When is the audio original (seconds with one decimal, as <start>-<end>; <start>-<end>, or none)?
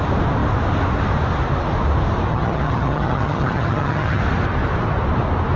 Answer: 0.0-2.3; 4.2-5.6